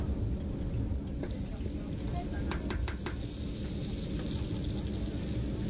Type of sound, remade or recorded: recorded